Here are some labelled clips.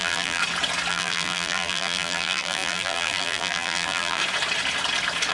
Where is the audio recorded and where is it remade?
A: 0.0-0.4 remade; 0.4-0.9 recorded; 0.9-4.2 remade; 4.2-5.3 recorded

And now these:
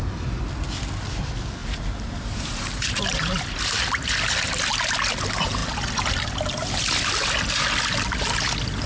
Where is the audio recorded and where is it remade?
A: 0.0-1.6 recorded; 1.6-3.4 remade; 3.4-8.9 recorded